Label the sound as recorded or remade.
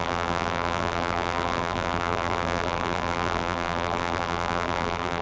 remade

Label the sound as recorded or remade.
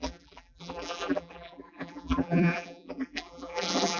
remade